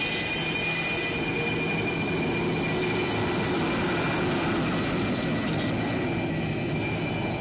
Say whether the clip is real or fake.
real